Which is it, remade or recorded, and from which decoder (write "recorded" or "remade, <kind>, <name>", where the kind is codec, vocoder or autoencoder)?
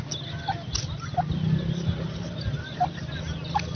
recorded